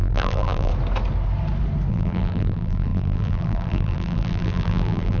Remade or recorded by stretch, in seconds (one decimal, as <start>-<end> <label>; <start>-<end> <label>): 0.0-0.7 remade; 0.7-1.9 recorded; 1.9-5.2 remade